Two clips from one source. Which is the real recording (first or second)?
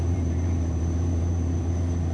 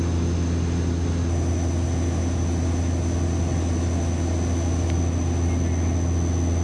second